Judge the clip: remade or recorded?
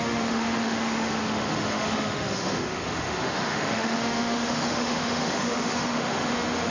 remade